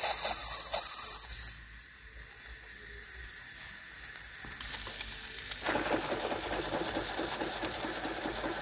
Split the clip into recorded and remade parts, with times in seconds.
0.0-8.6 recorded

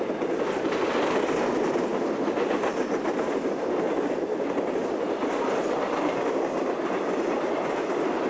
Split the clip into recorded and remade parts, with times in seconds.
0.0-8.3 recorded